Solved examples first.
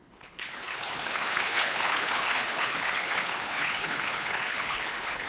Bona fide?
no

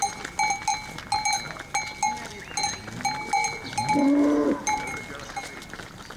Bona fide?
yes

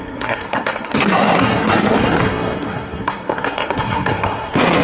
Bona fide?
no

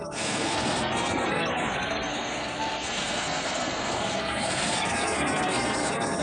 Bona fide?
no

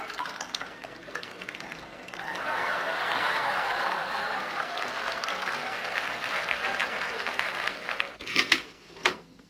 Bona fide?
no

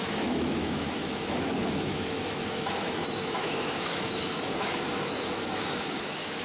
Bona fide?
no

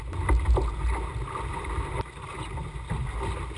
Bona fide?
yes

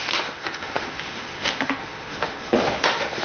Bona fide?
no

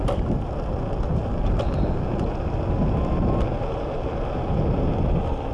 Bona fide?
yes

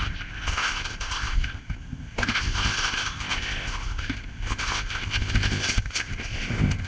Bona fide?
no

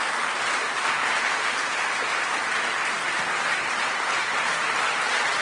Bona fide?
yes